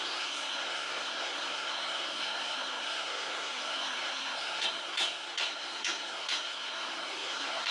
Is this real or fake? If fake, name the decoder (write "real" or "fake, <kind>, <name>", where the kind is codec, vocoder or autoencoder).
fake, codec, SNAC